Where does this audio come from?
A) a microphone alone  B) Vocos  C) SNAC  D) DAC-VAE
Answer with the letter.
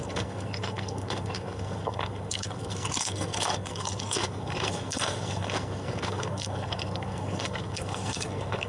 C